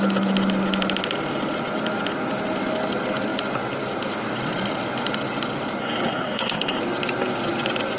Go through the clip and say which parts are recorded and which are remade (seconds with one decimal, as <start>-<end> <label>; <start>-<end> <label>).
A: 0.0-5.8 recorded; 5.8-6.8 remade; 6.8-8.0 recorded